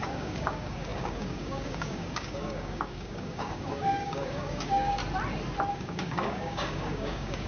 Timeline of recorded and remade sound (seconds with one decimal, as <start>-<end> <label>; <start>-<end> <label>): 0.0-5.0 remade; 5.0-5.7 recorded; 5.7-7.5 remade